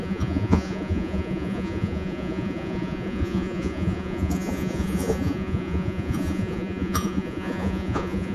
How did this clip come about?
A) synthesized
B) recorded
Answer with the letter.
A